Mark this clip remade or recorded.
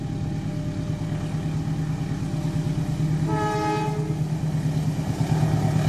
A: recorded